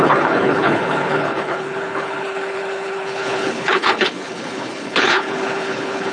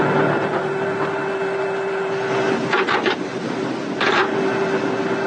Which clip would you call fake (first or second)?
first